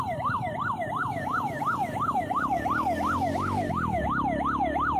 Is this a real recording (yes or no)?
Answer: no